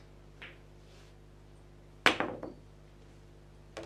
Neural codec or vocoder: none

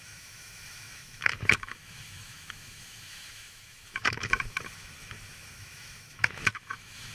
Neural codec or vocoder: autoencoder, DAC-VAE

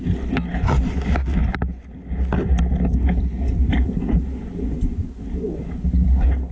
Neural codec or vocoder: none